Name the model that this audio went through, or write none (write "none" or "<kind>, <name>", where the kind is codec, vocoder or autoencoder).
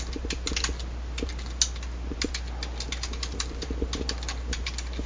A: none